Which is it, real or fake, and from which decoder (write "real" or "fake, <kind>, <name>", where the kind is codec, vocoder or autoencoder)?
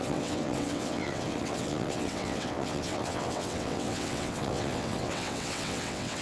fake, vocoder, WaveNeXt